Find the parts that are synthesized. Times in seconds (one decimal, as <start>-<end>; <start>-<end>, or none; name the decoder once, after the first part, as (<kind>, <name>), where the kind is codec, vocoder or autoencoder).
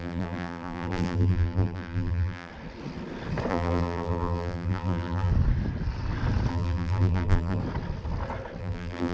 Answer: 0.0-2.5 (vocoder, BigVGAN v2); 3.5-5.3; 6.5-7.6; 8.6-9.1